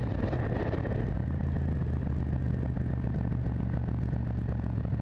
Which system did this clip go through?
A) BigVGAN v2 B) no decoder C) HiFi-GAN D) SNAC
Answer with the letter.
B